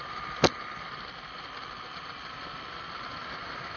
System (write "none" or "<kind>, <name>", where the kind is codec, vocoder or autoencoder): none